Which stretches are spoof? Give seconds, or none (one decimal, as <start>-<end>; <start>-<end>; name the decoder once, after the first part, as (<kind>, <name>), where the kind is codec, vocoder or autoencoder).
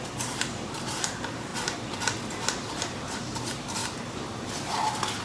0.0-1.5 (vocoder, BigVGAN v2); 3.1-3.8